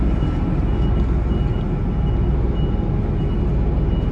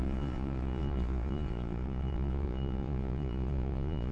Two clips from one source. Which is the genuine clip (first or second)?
first